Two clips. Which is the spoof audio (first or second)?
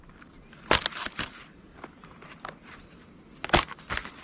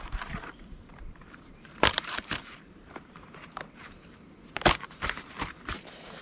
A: second